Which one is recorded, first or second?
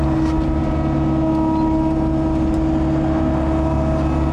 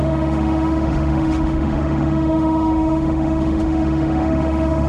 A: first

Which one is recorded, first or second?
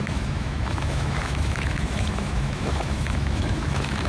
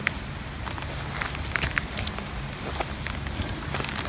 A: second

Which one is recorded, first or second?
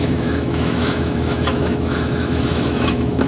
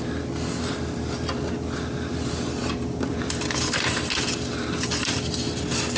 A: second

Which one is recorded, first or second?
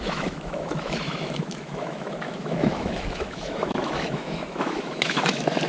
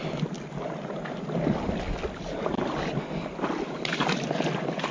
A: second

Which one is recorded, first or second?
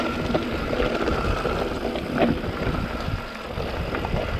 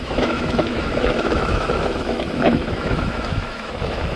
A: first